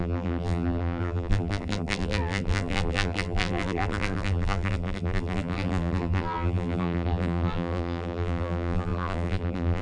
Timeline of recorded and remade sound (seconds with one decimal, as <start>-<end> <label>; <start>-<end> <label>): 0.0-9.8 remade